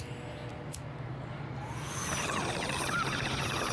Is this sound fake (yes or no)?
no